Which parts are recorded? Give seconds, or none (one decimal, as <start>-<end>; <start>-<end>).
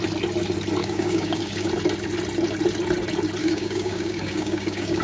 0.0-0.8; 1.7-3.4